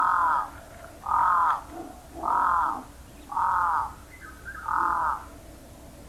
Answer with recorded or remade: recorded